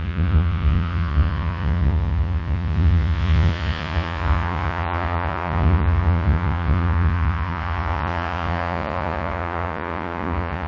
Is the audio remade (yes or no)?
yes